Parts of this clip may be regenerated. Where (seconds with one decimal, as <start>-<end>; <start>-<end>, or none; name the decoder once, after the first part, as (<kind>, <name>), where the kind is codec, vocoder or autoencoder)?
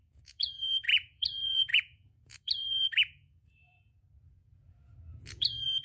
0.0-5.8 (vocoder, Vocos)